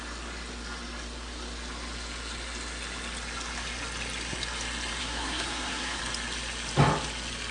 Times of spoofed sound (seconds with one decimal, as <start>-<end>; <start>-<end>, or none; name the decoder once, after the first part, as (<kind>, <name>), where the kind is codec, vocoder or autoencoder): 5.0-6.0 (codec, SNAC)